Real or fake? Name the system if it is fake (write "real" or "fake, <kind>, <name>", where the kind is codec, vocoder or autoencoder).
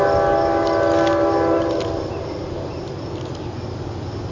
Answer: real